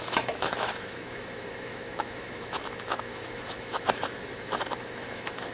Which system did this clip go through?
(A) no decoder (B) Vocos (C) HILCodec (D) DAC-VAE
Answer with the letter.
D